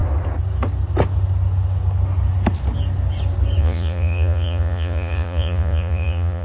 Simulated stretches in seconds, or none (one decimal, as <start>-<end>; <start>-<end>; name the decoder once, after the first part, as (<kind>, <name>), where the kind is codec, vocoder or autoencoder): 3.6-6.4 (vocoder, Vocos)